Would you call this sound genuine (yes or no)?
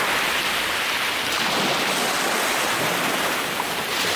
yes